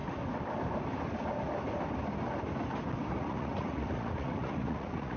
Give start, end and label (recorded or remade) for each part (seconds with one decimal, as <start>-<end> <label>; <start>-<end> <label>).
0.0-3.1 recorded; 3.1-5.2 remade